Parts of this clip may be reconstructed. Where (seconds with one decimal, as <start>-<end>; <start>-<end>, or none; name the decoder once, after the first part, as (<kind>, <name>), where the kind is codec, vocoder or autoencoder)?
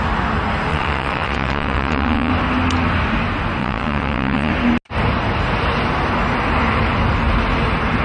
0.7-2.3 (vocoder, WaveNeXt); 3.6-4.5